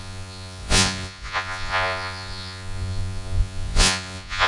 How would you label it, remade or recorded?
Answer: remade